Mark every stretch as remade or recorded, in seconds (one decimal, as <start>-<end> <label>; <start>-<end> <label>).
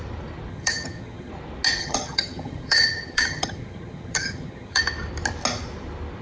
0.0-0.5 recorded; 0.5-1.3 remade; 1.3-1.8 recorded; 1.8-4.8 remade; 4.8-6.2 recorded